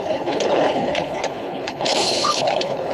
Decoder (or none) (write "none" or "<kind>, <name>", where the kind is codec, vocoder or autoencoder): codec, HILCodec